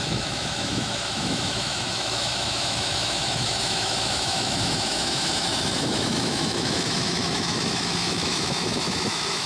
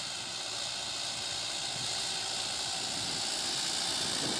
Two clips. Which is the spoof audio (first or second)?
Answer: first